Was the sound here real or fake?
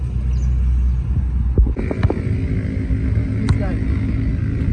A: real